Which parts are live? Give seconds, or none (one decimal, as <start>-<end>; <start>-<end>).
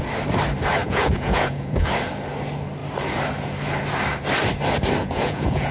0.0-0.8; 1.9-5.0